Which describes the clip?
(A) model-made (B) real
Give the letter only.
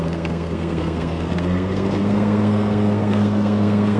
A